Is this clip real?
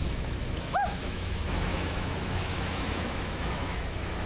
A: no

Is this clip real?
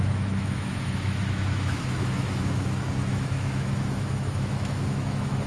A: no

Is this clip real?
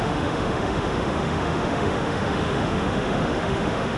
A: no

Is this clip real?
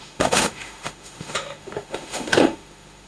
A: no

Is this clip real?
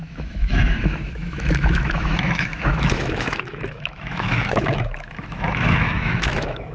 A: no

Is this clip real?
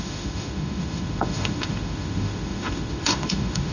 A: no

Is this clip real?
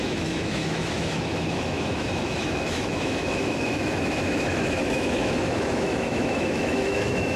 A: no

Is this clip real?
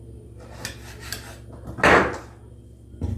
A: yes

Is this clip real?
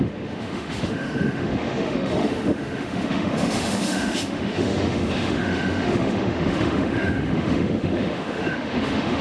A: no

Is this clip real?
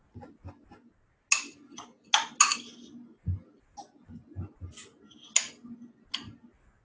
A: yes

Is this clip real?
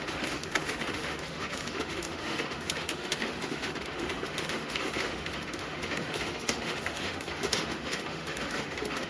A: no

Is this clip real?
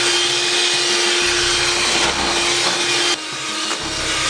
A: yes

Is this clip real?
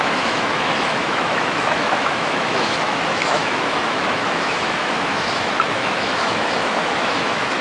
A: no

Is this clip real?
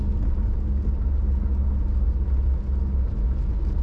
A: yes